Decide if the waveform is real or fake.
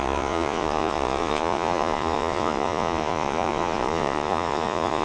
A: fake